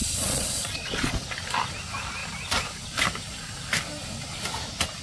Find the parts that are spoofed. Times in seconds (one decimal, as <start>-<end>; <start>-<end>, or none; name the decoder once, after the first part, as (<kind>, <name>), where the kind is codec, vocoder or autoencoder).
0.0-1.1 (vocoder, Vocos)